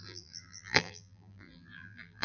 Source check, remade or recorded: remade